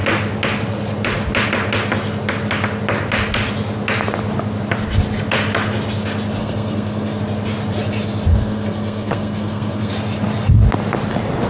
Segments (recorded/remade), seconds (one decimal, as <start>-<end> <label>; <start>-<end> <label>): 0.0-6.4 recorded; 6.4-7.2 remade; 7.2-8.3 recorded; 8.3-9.9 remade; 9.9-11.5 recorded